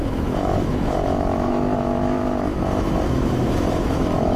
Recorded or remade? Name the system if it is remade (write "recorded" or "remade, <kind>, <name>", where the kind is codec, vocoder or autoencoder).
remade, autoencoder, DAC-VAE